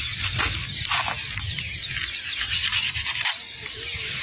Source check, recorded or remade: recorded